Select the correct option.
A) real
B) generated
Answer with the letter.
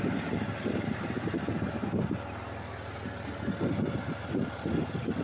A